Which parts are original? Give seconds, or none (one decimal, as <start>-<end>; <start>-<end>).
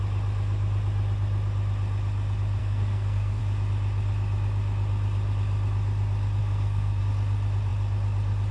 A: 0.0-2.6; 3.4-6.4; 7.0-8.5